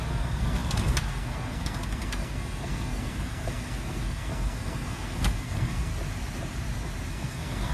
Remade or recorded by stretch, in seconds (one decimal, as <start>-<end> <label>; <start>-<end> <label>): 0.0-5.9 remade; 5.9-7.1 recorded; 7.1-7.7 remade